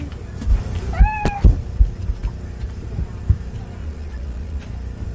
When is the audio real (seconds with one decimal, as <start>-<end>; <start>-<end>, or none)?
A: 0.0-3.8; 4.6-5.1